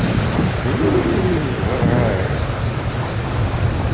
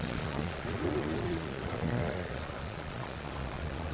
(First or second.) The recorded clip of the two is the first